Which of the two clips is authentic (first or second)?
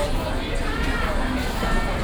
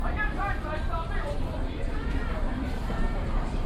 first